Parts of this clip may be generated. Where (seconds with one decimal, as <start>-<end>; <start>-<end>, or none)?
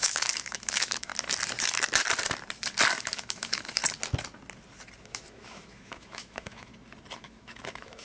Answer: 0.0-1.1; 3.0-3.8; 5.0-6.7; 7.2-8.0